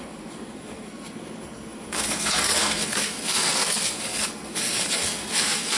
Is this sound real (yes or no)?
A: no